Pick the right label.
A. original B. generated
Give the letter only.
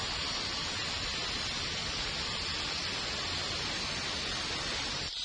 A